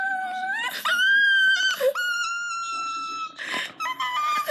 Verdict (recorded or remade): recorded